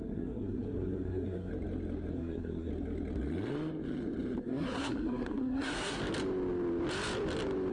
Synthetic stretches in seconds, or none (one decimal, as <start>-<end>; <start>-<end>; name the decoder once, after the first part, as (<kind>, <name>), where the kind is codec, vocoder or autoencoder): 0.0-1.5 (codec, SNAC); 2.1-2.7; 4.4-6.0